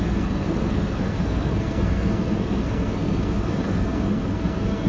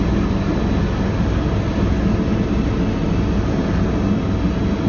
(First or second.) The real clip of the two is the second